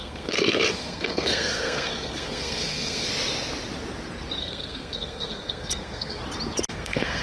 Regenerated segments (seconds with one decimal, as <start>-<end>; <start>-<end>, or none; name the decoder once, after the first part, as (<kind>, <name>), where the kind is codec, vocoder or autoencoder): 0.0-3.1 (codec, SNAC); 4.4-6.2; 6.7-7.2